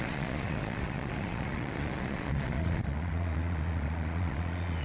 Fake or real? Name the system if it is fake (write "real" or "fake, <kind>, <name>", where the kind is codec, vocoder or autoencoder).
fake, vocoder, Vocos